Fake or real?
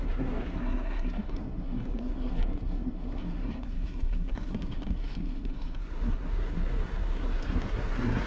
fake